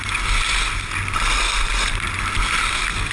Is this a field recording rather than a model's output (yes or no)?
yes